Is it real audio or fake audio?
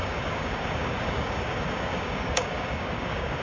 fake